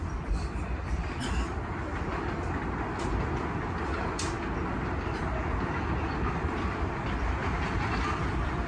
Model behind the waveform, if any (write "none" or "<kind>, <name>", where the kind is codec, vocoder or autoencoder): none